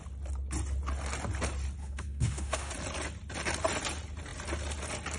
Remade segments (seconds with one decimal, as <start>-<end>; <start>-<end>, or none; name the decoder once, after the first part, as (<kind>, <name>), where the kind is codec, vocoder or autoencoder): 1.8-2.7 (autoencoder, DAC-VAE)